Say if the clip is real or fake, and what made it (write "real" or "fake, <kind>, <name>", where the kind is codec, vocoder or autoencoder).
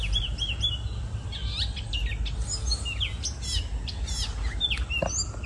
real